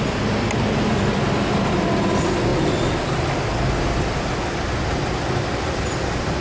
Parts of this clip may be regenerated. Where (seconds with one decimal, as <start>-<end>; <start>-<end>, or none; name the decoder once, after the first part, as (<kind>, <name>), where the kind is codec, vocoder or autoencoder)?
none